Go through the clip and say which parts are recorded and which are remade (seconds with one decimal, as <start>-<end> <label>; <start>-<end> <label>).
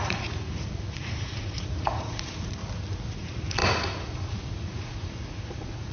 0.0-2.6 remade; 2.6-3.1 recorded; 3.1-5.9 remade